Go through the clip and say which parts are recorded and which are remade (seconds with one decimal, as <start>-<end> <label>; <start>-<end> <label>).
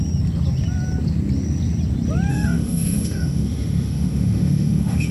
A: 0.0-2.3 recorded; 2.3-5.1 remade